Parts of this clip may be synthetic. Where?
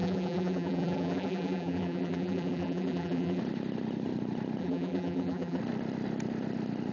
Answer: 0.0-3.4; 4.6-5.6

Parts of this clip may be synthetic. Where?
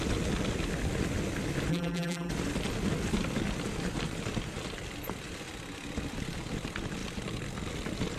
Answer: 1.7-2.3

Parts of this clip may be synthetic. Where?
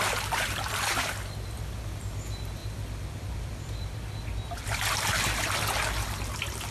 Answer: 2.6-4.3